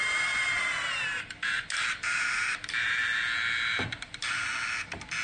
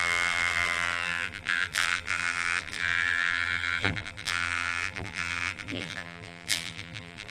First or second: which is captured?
first